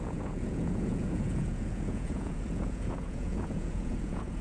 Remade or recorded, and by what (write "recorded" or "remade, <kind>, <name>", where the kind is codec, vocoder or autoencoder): remade, vocoder, Vocos